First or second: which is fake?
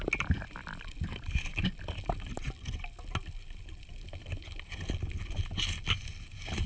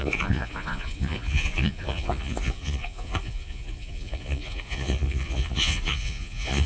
second